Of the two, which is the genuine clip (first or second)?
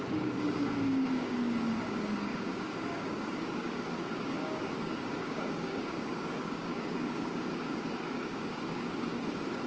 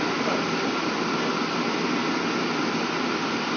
second